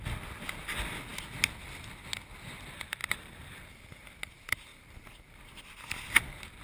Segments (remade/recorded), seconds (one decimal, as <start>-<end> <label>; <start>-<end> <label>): 0.0-3.0 recorded; 3.0-3.8 remade; 3.8-4.7 recorded; 4.7-5.6 remade; 5.6-6.6 recorded